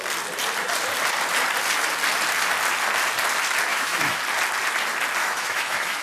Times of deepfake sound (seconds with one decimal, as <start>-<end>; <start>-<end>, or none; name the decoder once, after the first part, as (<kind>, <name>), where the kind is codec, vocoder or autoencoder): 3.7-4.2 (autoencoder, DAC-VAE); 5.2-6.0